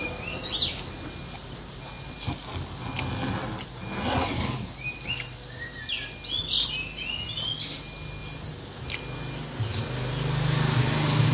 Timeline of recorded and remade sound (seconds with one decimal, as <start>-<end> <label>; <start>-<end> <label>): 0.0-11.3 recorded